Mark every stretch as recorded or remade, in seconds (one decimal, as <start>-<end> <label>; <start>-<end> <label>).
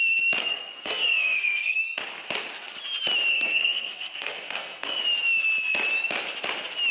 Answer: 0.0-0.4 recorded; 0.4-1.8 remade; 1.8-3.3 recorded; 3.3-5.0 remade; 5.0-6.9 recorded